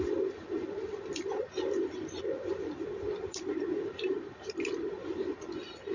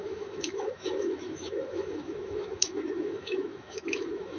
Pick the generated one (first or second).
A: second